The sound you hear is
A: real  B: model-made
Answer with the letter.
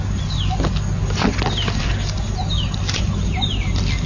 A